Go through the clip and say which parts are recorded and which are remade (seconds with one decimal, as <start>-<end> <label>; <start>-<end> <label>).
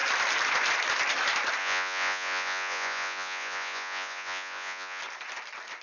0.0-1.6 recorded; 1.6-5.0 remade; 5.0-5.8 recorded